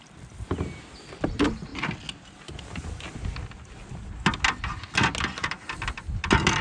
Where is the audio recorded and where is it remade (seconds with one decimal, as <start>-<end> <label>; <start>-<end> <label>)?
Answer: 0.0-6.6 recorded